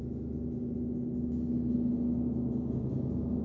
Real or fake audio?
real